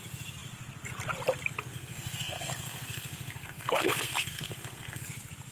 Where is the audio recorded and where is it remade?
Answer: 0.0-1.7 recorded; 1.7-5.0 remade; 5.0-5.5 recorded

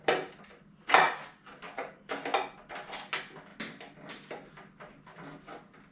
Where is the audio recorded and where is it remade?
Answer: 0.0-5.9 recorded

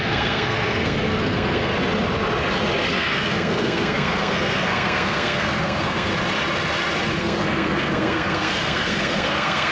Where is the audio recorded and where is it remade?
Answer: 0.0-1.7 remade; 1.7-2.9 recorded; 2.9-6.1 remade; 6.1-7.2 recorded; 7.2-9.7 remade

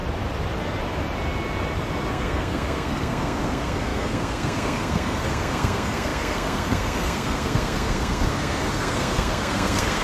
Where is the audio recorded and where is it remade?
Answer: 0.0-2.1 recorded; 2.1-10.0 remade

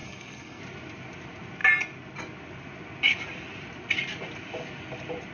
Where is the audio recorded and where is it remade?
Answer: 0.0-0.6 remade; 0.6-5.3 recorded